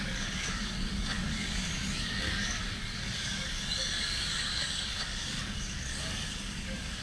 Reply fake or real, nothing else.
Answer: fake